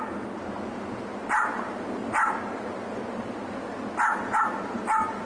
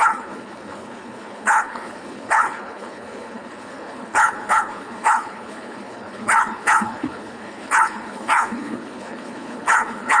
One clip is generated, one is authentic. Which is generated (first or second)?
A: second